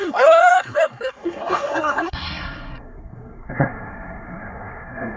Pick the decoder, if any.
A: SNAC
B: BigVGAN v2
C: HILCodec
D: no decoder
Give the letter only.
A